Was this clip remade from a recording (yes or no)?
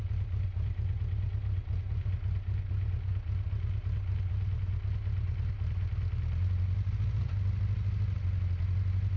no